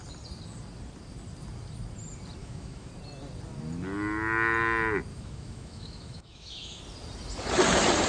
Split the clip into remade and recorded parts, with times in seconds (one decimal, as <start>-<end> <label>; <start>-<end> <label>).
0.0-2.4 recorded; 2.4-2.9 remade; 2.9-5.1 recorded; 5.1-6.8 remade; 6.8-8.1 recorded